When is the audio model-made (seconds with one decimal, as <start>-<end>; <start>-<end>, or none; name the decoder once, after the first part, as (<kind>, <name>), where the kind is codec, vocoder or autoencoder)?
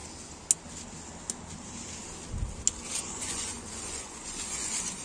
3.0-5.0 (vocoder, Vocos)